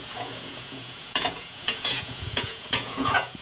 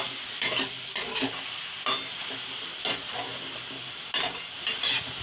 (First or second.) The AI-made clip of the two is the first